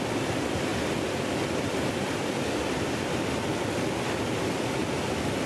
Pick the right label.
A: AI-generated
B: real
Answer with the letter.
B